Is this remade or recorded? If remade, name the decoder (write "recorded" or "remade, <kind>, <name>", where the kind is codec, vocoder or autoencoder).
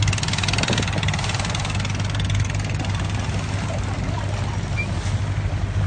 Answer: recorded